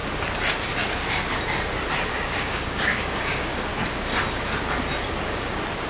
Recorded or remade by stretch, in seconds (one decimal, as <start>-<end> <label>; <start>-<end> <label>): 0.0-2.1 recorded; 2.1-3.7 remade; 3.7-5.9 recorded